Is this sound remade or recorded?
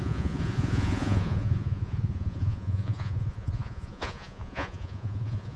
remade